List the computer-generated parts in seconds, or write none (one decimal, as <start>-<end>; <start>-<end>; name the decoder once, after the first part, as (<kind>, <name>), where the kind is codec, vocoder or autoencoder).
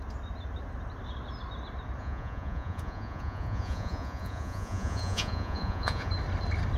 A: 2.0-6.1 (vocoder, Vocos)